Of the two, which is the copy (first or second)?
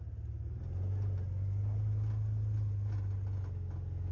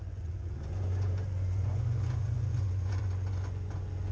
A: second